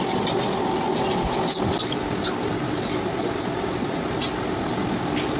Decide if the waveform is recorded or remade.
recorded